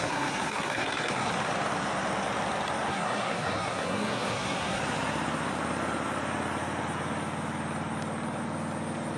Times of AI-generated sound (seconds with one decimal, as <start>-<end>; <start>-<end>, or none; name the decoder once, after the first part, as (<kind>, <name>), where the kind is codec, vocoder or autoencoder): 0.0-1.3 (codec, SNAC); 2.9-4.8